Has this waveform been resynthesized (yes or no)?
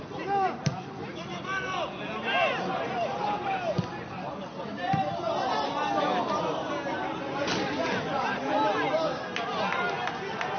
no